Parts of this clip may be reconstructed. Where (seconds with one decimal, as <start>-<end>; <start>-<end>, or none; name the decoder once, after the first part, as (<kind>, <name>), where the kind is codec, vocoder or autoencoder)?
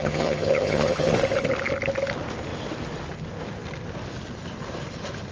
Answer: 0.0-1.1 (vocoder, HiFi-GAN)